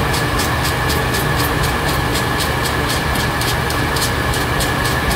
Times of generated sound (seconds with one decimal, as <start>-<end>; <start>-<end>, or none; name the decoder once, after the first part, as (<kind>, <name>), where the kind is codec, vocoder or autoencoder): none